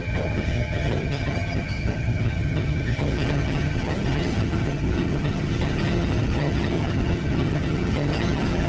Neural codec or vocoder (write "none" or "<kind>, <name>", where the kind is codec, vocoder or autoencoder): vocoder, HiFi-GAN